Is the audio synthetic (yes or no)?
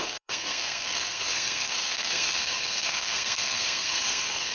yes